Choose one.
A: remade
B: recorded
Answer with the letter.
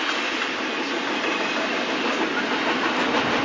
B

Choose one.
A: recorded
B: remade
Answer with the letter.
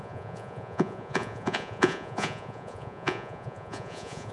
B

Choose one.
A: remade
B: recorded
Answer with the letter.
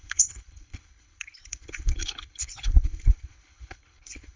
A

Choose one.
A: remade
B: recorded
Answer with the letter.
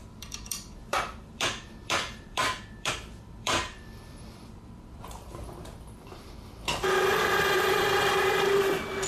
A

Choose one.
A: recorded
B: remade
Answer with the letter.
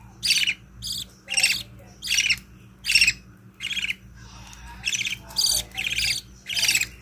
A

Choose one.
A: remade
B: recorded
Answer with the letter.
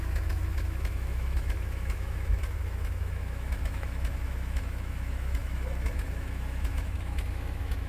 A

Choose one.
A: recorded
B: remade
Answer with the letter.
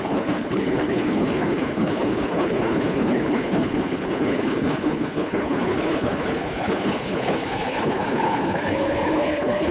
B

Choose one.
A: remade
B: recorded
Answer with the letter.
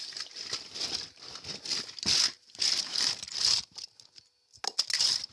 B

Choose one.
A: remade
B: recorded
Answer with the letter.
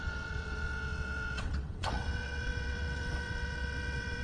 A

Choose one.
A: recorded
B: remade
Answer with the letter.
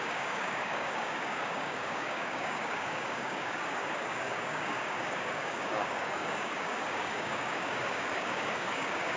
B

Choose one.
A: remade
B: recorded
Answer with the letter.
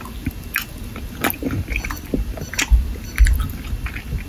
B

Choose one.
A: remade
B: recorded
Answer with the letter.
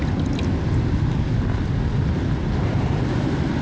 B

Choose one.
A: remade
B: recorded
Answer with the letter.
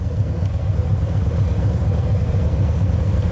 A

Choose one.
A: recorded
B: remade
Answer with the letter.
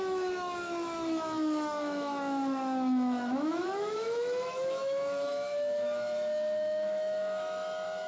B